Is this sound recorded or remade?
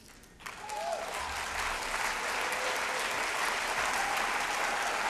recorded